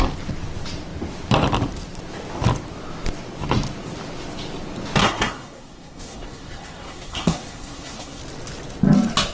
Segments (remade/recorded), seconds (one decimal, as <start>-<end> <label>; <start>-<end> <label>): 0.0-5.0 recorded; 5.0-8.2 remade; 8.2-9.3 recorded